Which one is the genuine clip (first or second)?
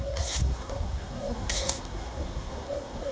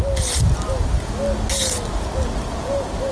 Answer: second